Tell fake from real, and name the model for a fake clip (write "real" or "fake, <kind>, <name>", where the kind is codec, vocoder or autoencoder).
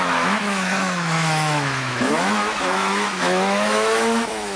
fake, autoencoder, DAC-VAE